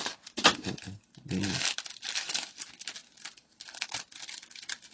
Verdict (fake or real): real